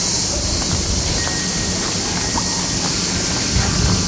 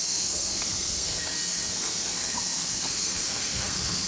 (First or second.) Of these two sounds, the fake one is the second